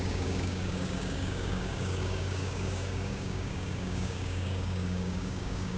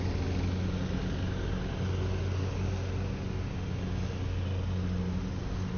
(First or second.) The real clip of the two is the second